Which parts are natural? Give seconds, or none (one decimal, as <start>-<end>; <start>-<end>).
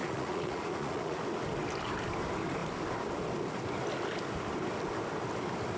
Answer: 1.2-5.8